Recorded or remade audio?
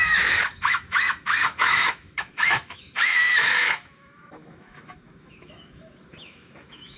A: remade